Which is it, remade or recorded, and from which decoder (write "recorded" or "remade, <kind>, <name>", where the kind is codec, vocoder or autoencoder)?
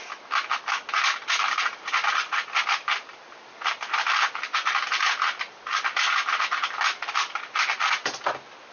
recorded